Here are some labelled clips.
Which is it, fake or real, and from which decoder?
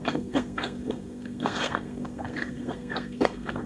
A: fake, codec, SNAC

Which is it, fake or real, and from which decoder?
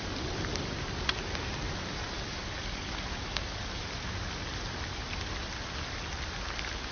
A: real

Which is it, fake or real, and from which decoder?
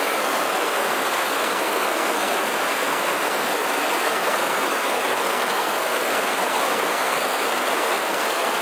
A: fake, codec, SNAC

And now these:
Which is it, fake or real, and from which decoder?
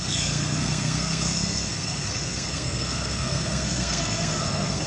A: fake, codec, SNAC